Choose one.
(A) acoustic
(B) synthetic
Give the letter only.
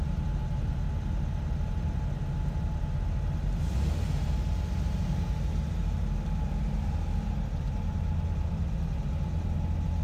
A